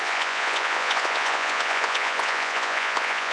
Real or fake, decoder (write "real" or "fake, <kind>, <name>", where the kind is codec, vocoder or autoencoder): fake, vocoder, Vocos